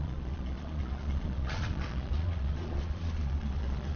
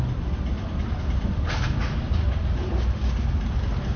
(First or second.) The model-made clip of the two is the first